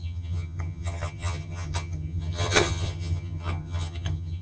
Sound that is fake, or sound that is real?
fake